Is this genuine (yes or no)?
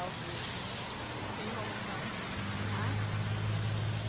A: yes